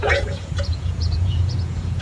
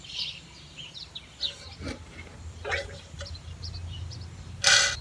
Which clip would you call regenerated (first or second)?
first